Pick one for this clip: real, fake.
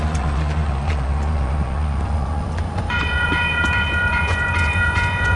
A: fake